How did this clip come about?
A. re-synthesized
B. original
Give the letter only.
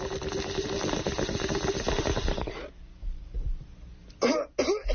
B